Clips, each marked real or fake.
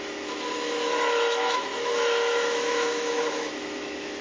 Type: fake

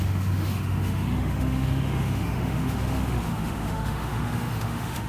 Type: fake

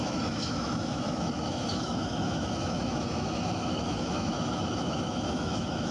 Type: fake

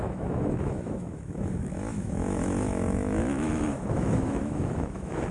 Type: fake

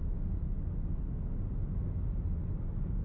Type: real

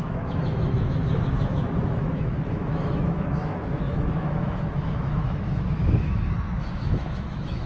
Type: fake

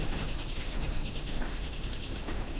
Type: fake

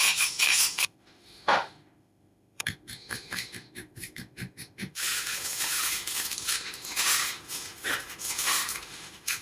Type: fake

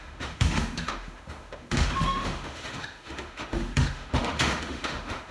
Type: fake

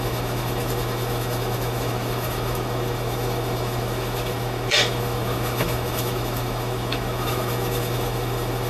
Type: fake